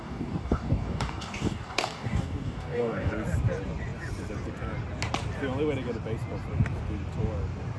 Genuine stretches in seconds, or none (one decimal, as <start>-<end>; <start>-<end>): 3.1-7.8